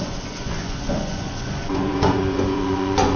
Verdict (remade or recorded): remade